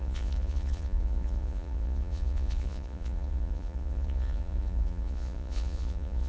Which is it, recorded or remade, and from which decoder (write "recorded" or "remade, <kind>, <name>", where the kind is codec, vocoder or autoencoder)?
remade, vocoder, Vocos